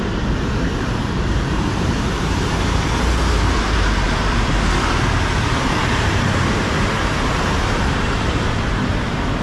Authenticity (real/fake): fake